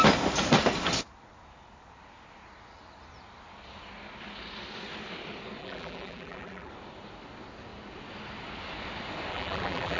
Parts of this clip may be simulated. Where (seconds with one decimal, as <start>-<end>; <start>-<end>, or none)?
5.6-6.7; 9.3-10.0